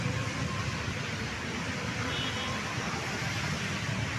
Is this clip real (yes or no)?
yes